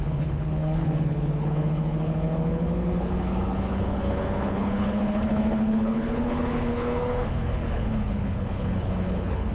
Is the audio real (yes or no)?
no